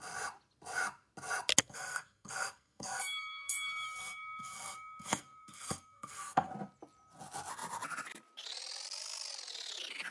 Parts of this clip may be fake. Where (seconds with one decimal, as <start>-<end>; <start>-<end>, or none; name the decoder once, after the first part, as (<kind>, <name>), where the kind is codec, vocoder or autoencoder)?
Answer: 1.6-6.5 (codec, SNAC)

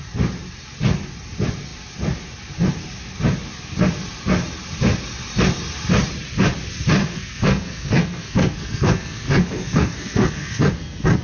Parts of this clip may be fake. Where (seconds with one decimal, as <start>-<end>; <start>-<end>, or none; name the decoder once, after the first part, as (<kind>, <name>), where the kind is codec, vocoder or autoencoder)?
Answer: 7.0-11.2 (codec, SNAC)

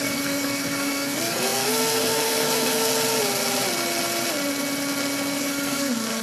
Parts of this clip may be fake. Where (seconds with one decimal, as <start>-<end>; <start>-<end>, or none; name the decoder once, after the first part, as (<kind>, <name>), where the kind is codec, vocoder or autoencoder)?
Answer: 0.0-2.9 (codec, SNAC); 5.4-6.2

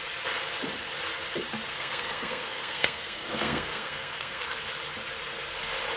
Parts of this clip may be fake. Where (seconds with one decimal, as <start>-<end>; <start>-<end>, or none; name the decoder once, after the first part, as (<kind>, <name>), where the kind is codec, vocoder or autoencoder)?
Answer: 1.7-4.7 (codec, SNAC)

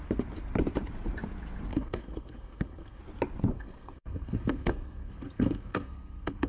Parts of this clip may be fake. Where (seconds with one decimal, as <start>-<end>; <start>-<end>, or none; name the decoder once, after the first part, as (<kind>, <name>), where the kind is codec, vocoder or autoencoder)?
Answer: 1.7-3.0 (codec, SNAC); 3.5-6.5